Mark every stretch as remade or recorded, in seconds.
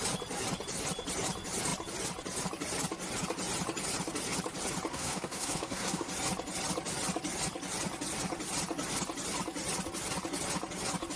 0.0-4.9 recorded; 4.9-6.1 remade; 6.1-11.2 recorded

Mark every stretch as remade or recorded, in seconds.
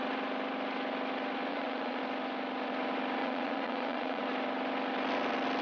0.0-1.5 recorded; 1.5-2.0 remade; 2.0-3.2 recorded; 3.2-4.2 remade; 4.2-5.6 recorded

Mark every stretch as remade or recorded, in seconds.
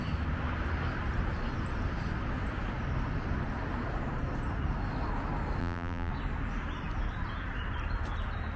0.0-5.6 recorded; 5.6-6.1 remade; 6.1-8.6 recorded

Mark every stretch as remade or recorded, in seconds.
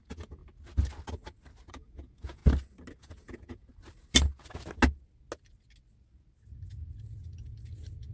0.0-0.4 remade; 0.4-1.7 recorded; 1.7-2.4 remade; 2.4-3.0 recorded; 3.0-3.7 remade; 3.7-8.1 recorded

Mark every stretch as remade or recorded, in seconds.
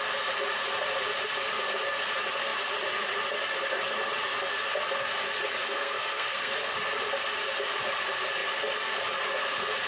0.0-5.6 recorded; 5.6-6.5 remade; 6.5-9.9 recorded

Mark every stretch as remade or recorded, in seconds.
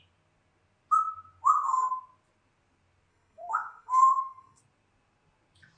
0.0-3.1 recorded; 3.1-4.6 remade; 4.6-5.8 recorded